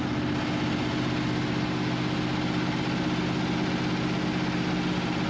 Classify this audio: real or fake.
real